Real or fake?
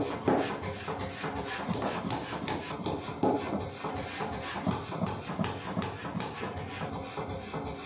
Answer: real